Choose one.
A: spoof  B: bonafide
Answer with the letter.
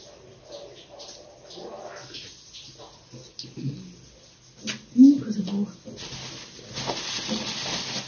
B